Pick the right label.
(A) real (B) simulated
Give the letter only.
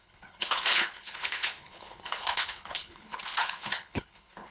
B